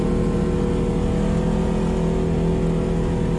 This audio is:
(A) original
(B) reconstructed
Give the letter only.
A